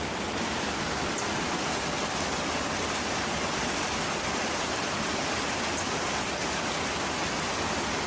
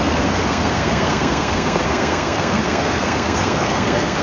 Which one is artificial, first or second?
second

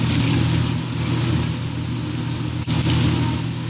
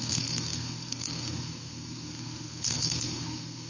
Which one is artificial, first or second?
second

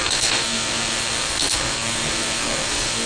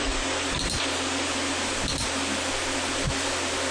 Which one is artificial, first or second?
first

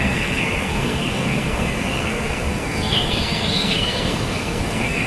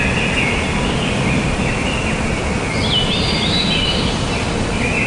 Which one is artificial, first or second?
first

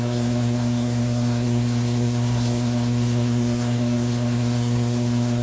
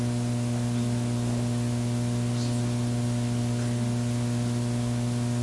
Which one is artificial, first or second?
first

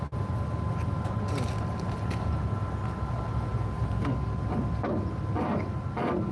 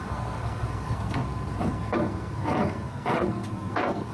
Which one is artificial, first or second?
second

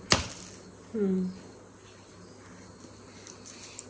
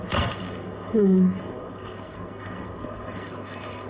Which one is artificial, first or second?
second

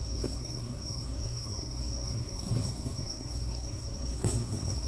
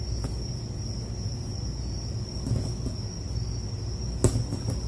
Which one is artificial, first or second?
first